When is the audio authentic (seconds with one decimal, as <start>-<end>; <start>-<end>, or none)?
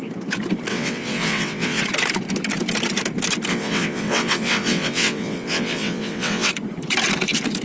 0.0-0.7; 1.8-3.5; 6.5-7.6